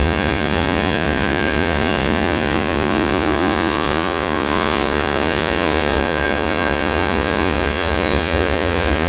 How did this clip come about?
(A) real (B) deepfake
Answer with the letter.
B